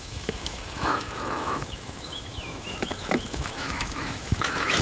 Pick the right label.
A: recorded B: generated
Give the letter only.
B